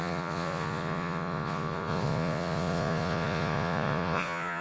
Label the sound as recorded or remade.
remade